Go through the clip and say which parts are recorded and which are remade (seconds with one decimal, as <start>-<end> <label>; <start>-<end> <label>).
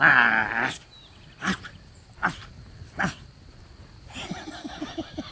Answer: 0.0-0.4 recorded; 0.4-3.6 remade; 3.6-5.3 recorded